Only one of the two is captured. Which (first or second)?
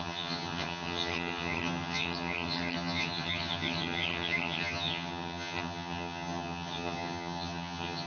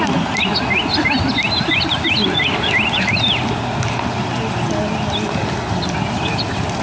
second